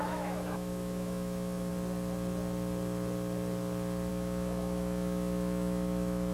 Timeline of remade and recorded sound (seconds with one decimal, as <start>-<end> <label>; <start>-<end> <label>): 0.0-1.7 remade; 1.7-4.1 recorded; 4.1-6.3 remade